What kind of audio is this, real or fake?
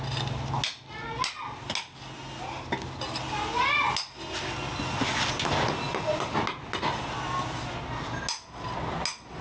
real